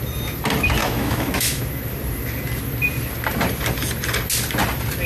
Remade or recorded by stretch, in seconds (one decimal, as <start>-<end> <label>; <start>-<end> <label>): 0.0-0.8 recorded; 0.8-1.6 remade; 1.6-5.1 recorded